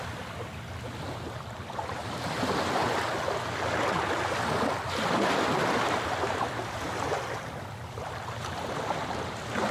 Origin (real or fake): real